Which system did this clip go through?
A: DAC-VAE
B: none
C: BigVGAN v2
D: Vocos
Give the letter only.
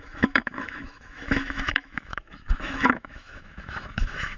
A